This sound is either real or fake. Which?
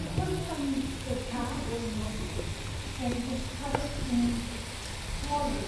real